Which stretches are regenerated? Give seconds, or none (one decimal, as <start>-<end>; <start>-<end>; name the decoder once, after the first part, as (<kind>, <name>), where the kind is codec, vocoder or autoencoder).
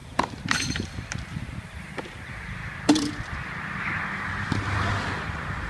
0.0-3.1 (vocoder, BigVGAN v2)